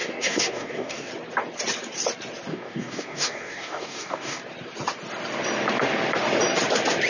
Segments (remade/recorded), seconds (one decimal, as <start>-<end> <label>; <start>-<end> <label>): 0.0-1.1 remade; 1.1-2.5 recorded; 2.5-4.4 remade; 4.4-7.1 recorded